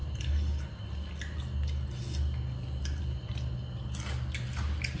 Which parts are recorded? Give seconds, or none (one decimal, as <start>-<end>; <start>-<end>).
0.0-5.0